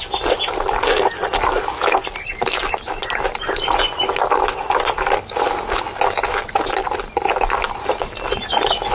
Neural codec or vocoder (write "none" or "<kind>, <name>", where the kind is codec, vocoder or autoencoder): none